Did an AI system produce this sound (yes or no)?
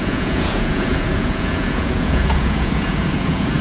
yes